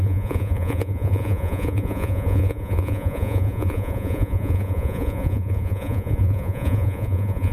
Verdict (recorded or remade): remade